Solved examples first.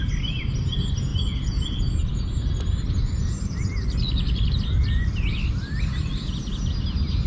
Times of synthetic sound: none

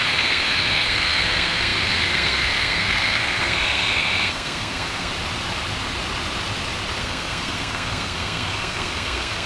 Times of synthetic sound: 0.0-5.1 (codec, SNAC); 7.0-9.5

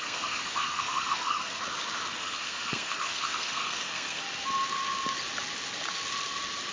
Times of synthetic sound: 0.0-1.6 (codec, SNAC); 2.1-4.2

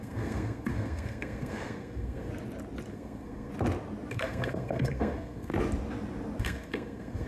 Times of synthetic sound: 0.0-2.3 (codec, SNAC); 2.9-3.5; 4.1-5.5; 6.4-7.3